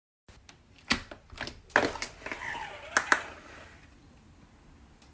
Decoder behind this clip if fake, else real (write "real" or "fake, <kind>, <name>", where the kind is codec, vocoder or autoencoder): real